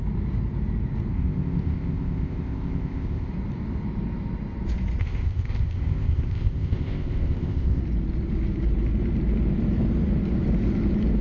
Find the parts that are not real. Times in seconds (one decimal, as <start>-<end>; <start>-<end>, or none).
1.1-3.3; 5.0-7.8